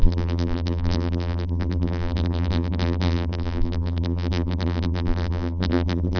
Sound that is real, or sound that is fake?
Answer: fake